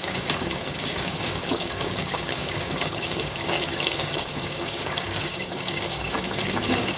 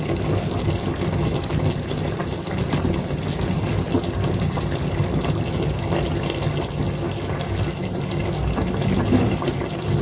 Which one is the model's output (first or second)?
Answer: first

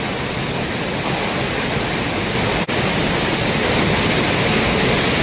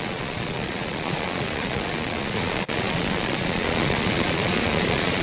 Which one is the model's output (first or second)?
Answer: second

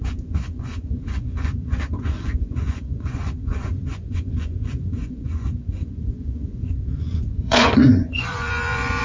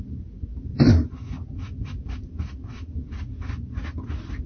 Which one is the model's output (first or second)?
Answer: first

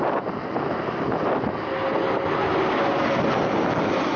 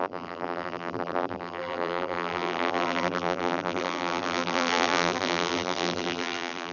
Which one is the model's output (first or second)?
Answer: second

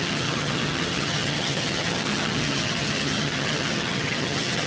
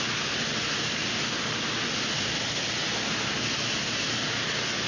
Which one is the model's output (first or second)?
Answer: first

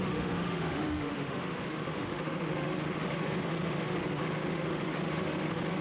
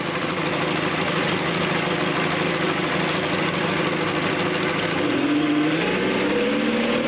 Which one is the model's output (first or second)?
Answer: first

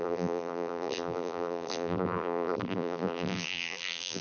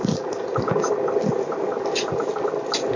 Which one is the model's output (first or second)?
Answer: first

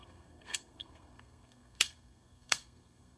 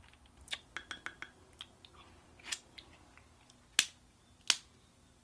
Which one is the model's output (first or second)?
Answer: first